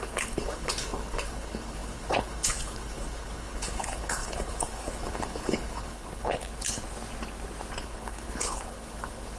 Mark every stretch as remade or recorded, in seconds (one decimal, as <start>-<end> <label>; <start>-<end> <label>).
0.0-6.8 remade; 6.8-7.8 recorded; 7.8-9.4 remade